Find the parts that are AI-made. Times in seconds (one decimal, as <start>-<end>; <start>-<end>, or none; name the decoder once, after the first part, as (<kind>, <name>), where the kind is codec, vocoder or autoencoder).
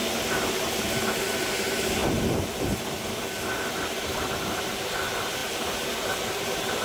0.0-2.0 (vocoder, BigVGAN v2); 3.4-6.8